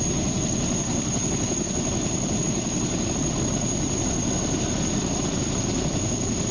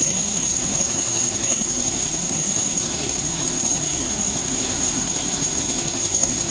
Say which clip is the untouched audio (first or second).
first